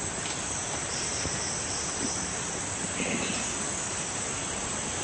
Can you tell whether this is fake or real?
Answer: fake